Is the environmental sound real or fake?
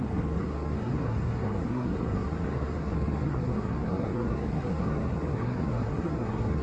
fake